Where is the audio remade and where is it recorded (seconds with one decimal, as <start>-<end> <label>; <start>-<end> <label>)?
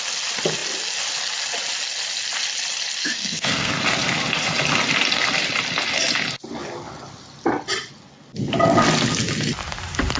0.0-3.0 recorded; 3.0-3.7 remade; 3.7-10.2 recorded